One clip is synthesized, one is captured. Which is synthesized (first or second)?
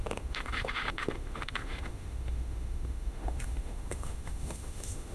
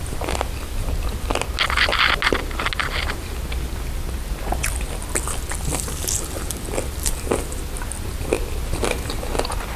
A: first